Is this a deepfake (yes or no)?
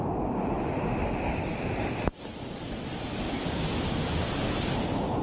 no